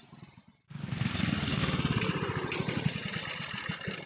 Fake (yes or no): no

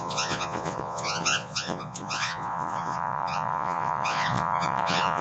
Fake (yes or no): yes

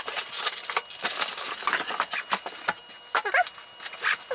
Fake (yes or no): no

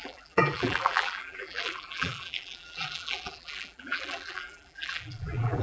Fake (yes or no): yes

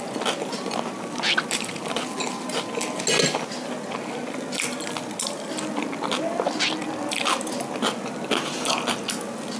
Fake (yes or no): no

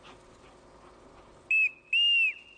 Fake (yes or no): no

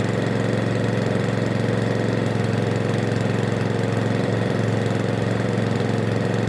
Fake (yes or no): no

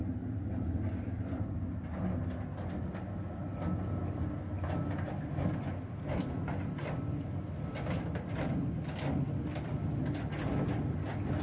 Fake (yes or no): no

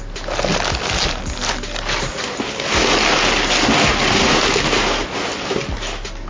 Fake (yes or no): no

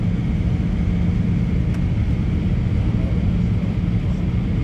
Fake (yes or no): no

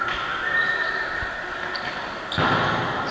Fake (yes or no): no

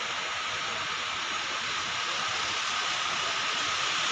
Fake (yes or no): no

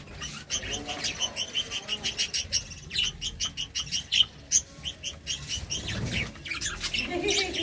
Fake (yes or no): no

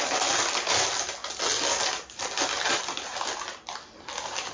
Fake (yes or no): no